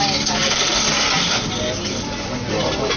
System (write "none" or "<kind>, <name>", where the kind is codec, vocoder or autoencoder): none